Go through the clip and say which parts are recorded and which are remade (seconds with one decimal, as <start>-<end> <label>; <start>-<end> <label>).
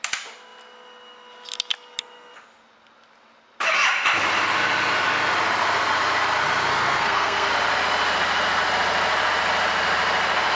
0.0-6.7 recorded; 6.7-7.5 remade; 7.5-10.6 recorded